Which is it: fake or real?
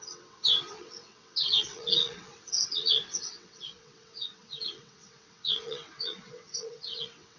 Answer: fake